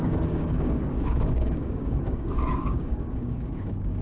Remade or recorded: remade